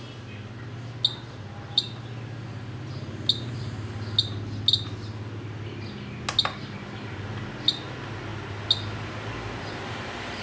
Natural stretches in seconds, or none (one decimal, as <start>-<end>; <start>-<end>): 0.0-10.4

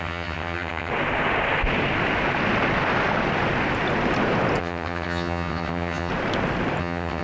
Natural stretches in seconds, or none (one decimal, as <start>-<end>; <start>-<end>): 0.9-4.6; 6.1-6.8

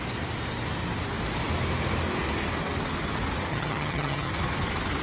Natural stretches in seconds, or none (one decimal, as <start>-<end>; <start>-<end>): 0.0-3.5; 4.3-5.0

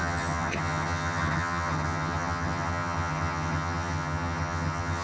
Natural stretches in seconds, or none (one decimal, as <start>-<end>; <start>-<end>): none

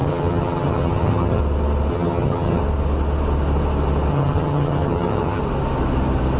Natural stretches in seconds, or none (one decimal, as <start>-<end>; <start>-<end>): 1.4-1.9; 2.6-4.1; 5.4-6.4

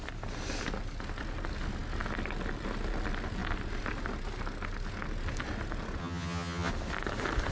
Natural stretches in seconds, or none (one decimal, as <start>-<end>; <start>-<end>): 0.0-6.0; 6.7-7.5